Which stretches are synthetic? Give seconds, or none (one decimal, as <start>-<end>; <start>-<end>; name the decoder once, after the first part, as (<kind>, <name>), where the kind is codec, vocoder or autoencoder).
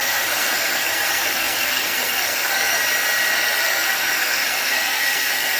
0.0-2.8 (codec, SNAC); 3.3-5.6